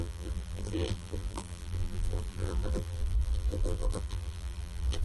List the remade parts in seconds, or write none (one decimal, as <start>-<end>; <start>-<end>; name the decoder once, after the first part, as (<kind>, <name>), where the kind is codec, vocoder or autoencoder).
0.0-5.0 (vocoder, BigVGAN v2)